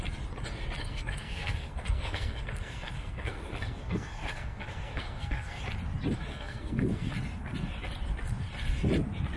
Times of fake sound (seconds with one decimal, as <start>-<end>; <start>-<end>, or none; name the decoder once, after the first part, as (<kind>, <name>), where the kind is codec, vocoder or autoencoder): 0.8-5.6 (codec, SNAC); 6.3-7.1